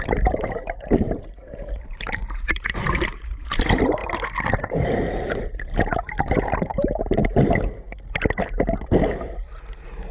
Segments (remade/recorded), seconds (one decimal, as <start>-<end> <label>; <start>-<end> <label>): 0.0-4.0 remade; 4.0-4.5 recorded; 4.5-7.2 remade; 7.2-10.1 recorded